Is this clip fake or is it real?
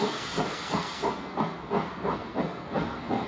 fake